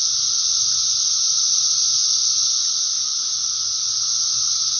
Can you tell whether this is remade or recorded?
remade